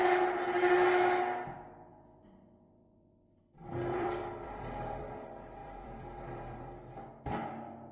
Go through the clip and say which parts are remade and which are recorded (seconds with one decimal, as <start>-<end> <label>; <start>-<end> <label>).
0.0-1.9 recorded; 1.9-5.0 remade; 5.0-5.6 recorded; 5.6-6.8 remade; 6.8-7.9 recorded